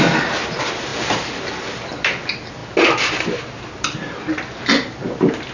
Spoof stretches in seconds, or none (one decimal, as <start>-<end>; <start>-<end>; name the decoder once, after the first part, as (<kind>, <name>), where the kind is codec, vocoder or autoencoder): none